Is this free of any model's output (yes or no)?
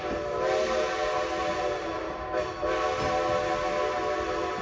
yes